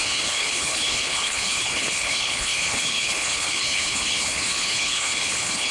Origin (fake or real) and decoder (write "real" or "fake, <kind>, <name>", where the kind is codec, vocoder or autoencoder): fake, codec, HILCodec